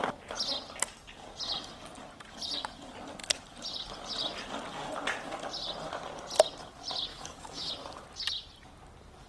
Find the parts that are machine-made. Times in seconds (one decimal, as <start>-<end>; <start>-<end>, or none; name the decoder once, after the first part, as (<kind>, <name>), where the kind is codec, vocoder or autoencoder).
7.1-7.7 (autoencoder, DAC-VAE)

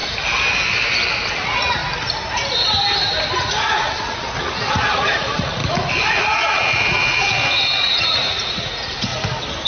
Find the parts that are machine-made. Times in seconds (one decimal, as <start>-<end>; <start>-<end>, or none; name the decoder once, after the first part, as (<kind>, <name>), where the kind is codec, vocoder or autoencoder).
1.3-1.8 (vocoder, Vocos); 3.4-5.6; 6.2-9.1